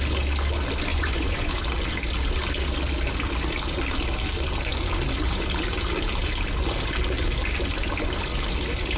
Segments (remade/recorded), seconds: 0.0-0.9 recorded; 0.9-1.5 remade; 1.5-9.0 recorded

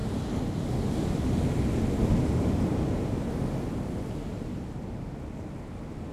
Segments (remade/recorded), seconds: 0.0-6.1 recorded

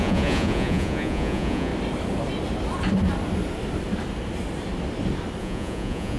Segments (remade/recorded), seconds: 0.0-1.7 remade; 1.7-5.4 recorded; 5.4-6.2 remade

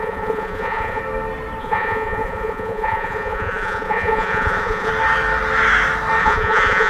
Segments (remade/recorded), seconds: 0.0-1.0 remade; 1.0-1.6 recorded; 1.6-4.9 remade; 4.9-6.2 recorded; 6.2-6.9 remade

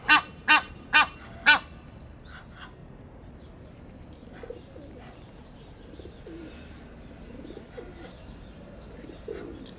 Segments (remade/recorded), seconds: 0.0-2.8 recorded; 2.8-3.3 remade; 3.3-9.8 recorded

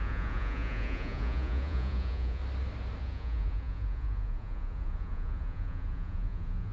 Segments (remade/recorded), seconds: 0.0-2.4 remade; 2.4-3.0 recorded; 3.0-6.7 remade